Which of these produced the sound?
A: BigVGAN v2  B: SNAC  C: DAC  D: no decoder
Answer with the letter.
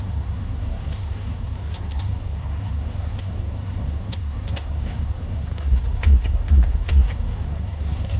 B